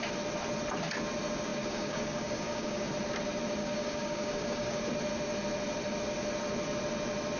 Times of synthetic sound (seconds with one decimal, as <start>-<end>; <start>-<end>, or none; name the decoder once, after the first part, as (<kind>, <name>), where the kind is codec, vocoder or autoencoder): 1.5-2.9 (codec, DAC); 3.6-4.9